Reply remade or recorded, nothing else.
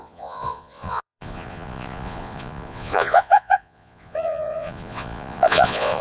remade